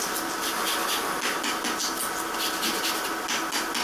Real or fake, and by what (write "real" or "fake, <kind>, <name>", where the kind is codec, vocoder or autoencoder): real